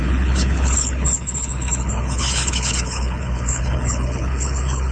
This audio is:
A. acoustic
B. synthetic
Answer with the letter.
B